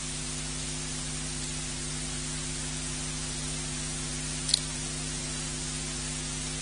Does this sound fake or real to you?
real